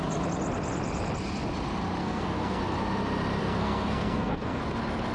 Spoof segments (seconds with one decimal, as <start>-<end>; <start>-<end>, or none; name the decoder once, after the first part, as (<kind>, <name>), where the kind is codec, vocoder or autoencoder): 2.0-2.6 (codec, SNAC); 3.4-4.6